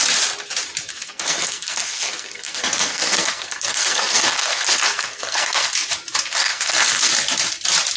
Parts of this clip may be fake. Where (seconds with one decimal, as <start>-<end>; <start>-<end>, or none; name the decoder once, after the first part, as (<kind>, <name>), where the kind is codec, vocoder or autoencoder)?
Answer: 0.9-5.7 (codec, SNAC); 6.4-7.1